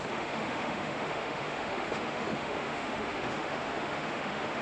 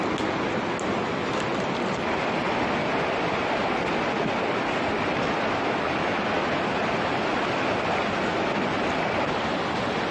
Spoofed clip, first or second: first